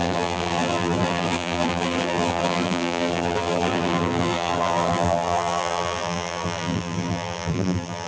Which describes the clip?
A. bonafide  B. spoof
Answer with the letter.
B